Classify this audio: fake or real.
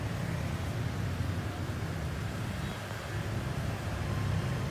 real